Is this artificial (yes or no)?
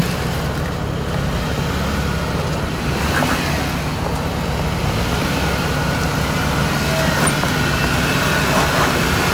no